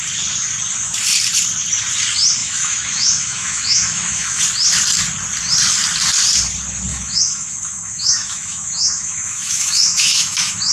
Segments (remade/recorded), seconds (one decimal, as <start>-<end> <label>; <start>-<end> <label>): 0.0-2.4 recorded; 2.4-4.4 remade; 4.4-6.9 recorded; 6.9-10.7 remade